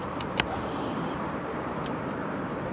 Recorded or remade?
remade